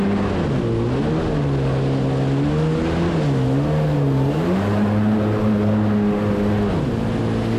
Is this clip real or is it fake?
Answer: real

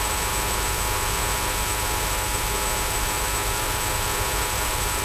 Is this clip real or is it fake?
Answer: fake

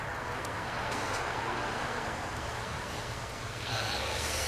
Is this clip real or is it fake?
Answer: fake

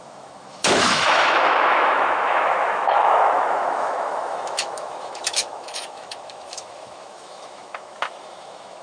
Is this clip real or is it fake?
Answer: fake